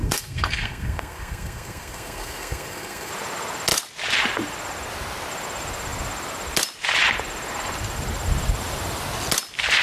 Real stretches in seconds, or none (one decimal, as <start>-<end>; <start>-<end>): 3.1-9.8